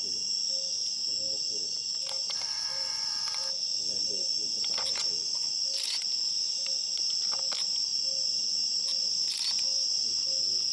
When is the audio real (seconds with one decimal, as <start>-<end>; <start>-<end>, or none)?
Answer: 0.0-2.2; 6.1-10.7